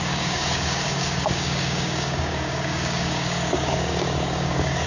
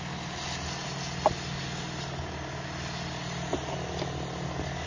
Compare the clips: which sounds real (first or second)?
second